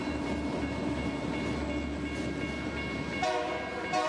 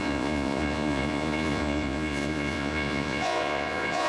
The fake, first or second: second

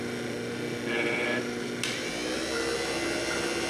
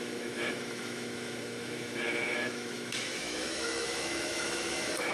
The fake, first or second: second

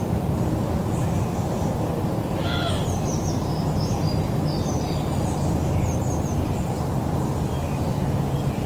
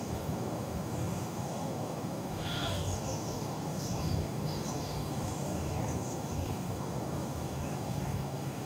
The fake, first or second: second